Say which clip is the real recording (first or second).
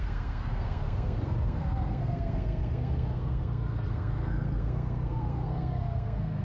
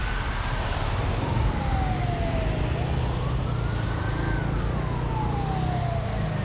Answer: second